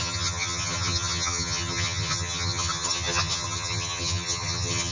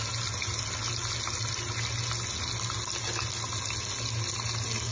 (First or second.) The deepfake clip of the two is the first